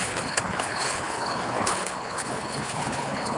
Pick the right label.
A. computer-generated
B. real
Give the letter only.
A